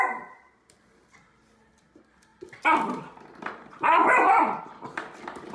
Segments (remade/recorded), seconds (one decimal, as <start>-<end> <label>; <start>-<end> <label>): 0.0-5.5 remade